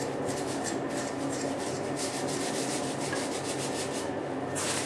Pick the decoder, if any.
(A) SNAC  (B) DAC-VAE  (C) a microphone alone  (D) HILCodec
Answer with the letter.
C